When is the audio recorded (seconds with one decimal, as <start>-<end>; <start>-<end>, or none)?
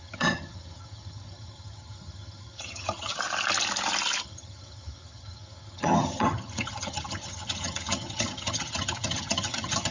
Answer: 3.1-4.2